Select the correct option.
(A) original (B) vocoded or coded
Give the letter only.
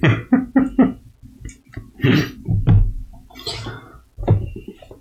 A